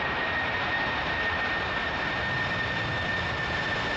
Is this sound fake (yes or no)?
no